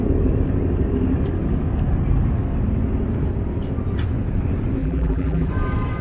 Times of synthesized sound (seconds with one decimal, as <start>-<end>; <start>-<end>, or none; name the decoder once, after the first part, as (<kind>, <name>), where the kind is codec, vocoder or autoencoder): 4.8-5.5 (vocoder, BigVGAN v2)